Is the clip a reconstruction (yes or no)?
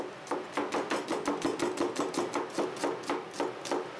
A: no